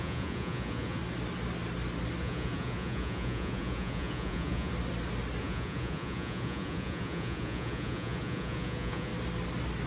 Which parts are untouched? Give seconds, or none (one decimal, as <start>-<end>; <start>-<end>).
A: 1.0-2.2; 4.7-5.4; 9.1-9.9